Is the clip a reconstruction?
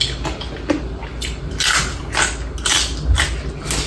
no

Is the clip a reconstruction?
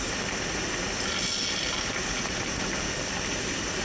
no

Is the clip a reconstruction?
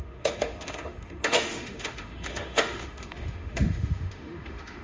yes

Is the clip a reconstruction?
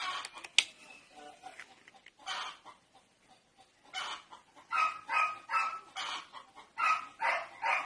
no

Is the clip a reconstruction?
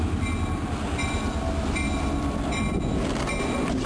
no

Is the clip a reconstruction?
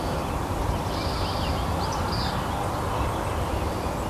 no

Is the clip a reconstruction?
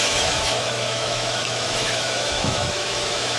yes